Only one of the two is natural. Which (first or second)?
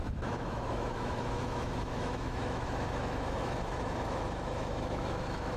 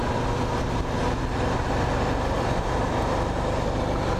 second